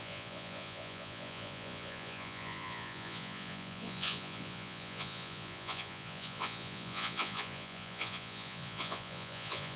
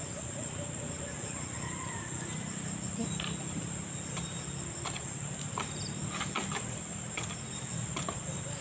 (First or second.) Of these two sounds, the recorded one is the second